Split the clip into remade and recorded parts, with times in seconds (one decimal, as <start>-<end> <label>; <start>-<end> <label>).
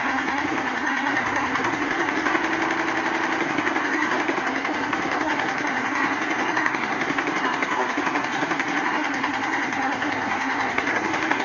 0.0-2.4 remade; 2.4-3.4 recorded; 3.4-11.4 remade